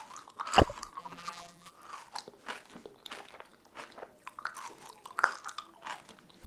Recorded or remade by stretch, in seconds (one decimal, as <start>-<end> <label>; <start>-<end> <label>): 0.0-1.0 recorded; 1.0-1.7 remade; 1.7-6.5 recorded